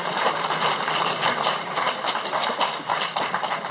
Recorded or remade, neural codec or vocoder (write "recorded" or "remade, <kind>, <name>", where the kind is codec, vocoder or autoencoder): remade, vocoder, BigVGAN v2